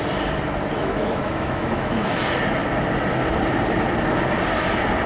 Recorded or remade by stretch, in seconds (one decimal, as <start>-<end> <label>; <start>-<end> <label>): 0.0-0.8 recorded; 0.8-2.1 remade; 2.1-5.1 recorded

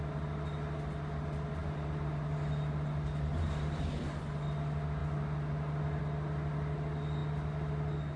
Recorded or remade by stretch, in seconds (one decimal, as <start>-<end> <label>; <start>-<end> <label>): 0.0-8.2 recorded